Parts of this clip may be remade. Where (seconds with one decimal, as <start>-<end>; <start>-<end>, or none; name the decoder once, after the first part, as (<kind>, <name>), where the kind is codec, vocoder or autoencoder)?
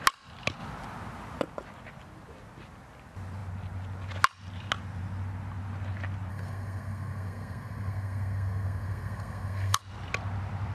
6.3-9.8 (codec, SNAC)